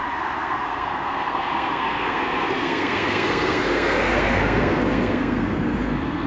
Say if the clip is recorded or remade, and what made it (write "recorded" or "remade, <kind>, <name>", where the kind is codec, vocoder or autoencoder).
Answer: remade, codec, SNAC